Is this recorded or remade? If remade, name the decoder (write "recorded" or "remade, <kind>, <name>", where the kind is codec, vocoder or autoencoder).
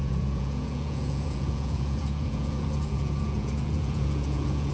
remade, vocoder, Vocos